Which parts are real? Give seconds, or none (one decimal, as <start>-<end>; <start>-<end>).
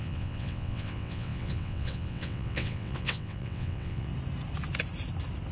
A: 4.1-5.5